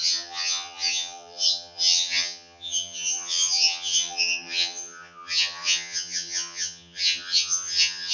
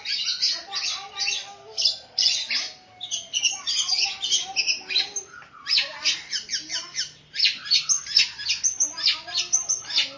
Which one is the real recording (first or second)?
second